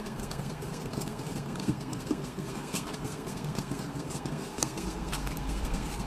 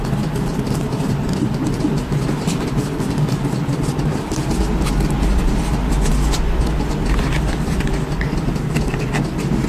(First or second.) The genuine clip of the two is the second